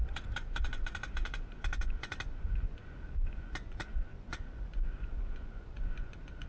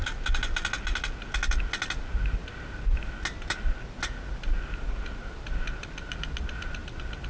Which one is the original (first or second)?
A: second